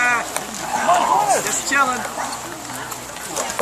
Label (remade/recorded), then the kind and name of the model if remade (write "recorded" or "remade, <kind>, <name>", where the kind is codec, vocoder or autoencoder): recorded